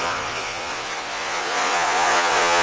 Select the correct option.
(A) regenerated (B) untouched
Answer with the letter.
A